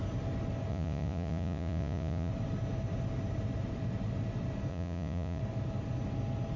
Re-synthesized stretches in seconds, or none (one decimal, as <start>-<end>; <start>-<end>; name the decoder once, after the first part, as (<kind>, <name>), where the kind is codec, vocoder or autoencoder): 0.7-2.3 (vocoder, Vocos); 4.7-5.4